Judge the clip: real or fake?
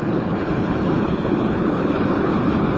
fake